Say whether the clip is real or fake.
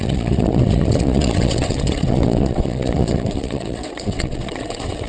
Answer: fake